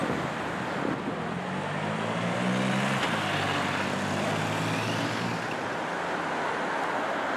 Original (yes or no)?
yes